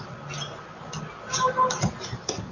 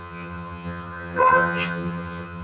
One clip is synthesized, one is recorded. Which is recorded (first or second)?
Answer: first